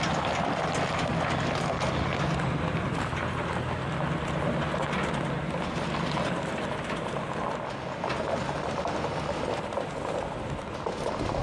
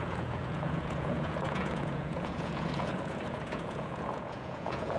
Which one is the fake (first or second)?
second